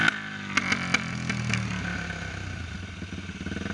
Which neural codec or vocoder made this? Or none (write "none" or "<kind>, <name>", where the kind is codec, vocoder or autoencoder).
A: none